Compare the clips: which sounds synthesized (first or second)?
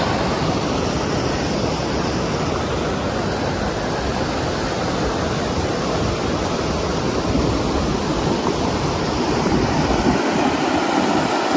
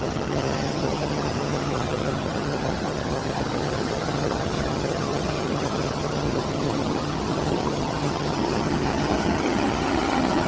second